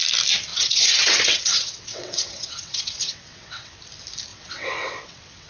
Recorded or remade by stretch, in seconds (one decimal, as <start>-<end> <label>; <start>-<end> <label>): 0.0-0.5 recorded; 0.5-3.8 remade; 3.8-4.3 recorded; 4.3-5.5 remade